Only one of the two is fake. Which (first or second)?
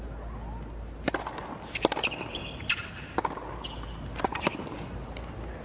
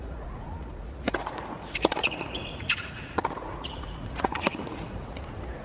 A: second